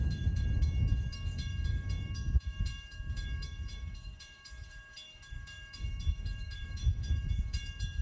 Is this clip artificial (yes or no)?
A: yes